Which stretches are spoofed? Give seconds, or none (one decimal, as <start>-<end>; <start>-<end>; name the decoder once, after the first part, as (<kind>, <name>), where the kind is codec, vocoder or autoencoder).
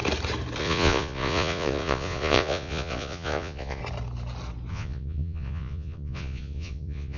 0.6-3.8 (vocoder, Vocos); 4.7-7.2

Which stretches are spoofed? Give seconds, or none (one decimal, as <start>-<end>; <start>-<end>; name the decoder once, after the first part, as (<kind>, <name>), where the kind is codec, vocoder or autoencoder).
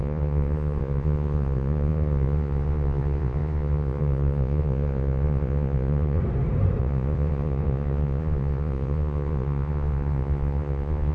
0.0-6.2 (vocoder, Vocos); 6.8-11.1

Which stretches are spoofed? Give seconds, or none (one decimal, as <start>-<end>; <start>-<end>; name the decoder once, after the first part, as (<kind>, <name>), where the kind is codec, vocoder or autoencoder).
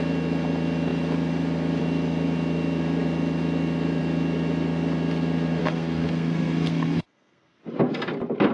5.6-7.6 (codec, SNAC)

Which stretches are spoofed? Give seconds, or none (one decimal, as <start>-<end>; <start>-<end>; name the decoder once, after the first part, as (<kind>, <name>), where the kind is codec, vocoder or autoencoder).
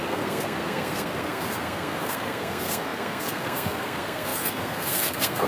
0.0-5.5 (codec, SNAC)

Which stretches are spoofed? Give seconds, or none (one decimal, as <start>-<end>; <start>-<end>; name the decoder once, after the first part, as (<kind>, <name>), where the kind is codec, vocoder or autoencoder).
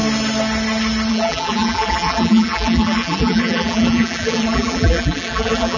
1.1-5.8 (vocoder, BigVGAN v2)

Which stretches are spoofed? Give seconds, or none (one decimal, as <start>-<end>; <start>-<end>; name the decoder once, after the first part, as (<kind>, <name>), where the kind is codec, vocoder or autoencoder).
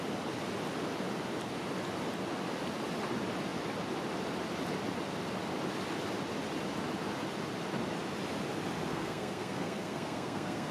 8.9-10.7 (codec, SNAC)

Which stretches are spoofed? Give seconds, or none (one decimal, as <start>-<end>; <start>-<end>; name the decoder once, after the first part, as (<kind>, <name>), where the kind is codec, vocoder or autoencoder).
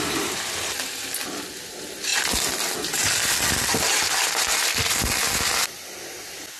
0.0-2.1 (vocoder, BigVGAN v2); 5.5-6.6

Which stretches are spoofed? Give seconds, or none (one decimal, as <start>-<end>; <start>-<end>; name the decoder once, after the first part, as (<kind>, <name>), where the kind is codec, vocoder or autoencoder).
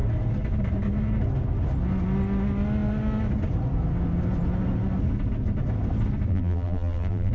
6.3-7.3 (vocoder, BigVGAN v2)